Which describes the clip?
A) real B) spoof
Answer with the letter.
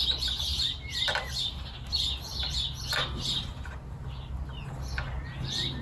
A